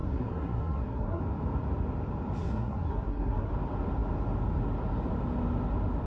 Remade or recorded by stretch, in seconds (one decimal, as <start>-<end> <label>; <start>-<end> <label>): 0.0-1.2 remade; 1.2-2.4 recorded; 2.4-3.5 remade; 3.5-6.1 recorded